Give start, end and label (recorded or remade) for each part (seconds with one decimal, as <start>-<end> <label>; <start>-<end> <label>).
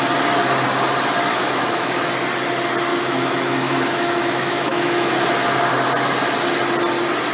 0.0-1.3 recorded; 1.3-2.1 remade; 2.1-2.9 recorded; 2.9-5.1 remade; 5.1-7.3 recorded